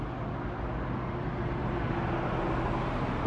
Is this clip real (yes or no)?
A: yes